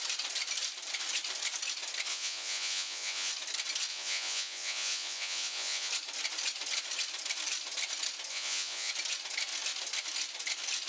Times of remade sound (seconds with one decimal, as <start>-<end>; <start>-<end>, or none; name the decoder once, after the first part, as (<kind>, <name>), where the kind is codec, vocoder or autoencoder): 2.1-3.3 (vocoder, Vocos); 3.9-5.9; 8.3-8.9

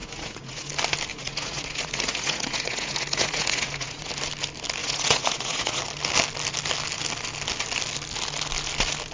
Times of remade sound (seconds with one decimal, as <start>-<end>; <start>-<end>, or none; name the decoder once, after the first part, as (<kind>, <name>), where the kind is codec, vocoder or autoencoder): 0.0-0.7 (vocoder, Vocos); 1.1-4.1; 4.8-5.8

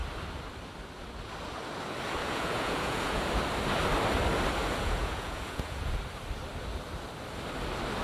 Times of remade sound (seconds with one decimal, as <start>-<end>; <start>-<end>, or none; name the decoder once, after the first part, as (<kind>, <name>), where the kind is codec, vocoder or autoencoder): 2.2-3.3 (vocoder, Vocos); 4.6-6.0

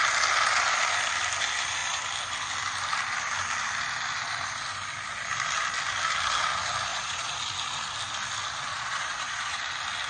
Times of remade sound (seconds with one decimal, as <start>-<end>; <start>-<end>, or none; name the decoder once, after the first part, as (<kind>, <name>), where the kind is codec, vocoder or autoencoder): 6.9-7.4 (vocoder, Vocos); 8.7-9.6